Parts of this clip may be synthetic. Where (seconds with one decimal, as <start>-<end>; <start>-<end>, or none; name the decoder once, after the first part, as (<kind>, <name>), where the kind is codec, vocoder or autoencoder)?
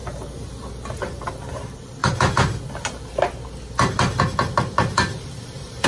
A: 1.1-2.0 (vocoder, BigVGAN v2); 4.2-5.9